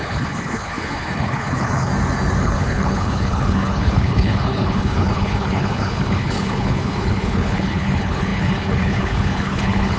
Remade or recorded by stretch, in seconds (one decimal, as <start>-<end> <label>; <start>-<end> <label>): 0.0-1.9 remade; 1.9-2.4 recorded; 2.4-10.0 remade